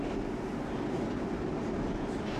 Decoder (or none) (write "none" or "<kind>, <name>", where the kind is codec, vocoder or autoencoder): none